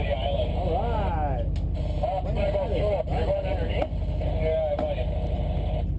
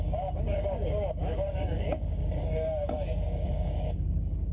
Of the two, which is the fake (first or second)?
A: second